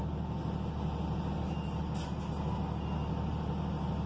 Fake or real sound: real